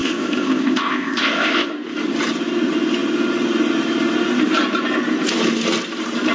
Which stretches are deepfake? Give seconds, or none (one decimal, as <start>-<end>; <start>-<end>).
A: 0.0-1.7